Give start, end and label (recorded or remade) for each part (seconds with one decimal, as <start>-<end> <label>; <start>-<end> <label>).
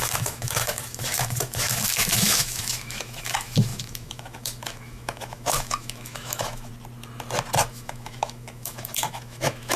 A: 0.0-6.7 remade; 6.7-7.7 recorded; 7.7-9.8 remade